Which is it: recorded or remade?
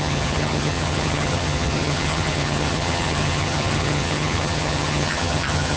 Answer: remade